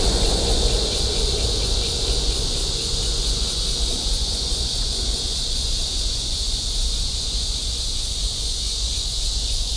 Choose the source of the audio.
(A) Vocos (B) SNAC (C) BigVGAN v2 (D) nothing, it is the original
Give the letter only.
A